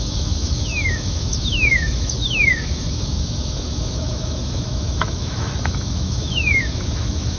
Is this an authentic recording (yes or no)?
no